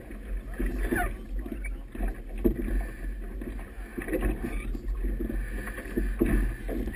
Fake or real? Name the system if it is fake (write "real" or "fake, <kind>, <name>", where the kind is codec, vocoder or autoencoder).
real